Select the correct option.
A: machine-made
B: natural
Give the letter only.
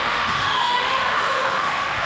A